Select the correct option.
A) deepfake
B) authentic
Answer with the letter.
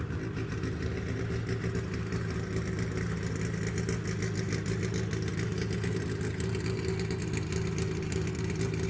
B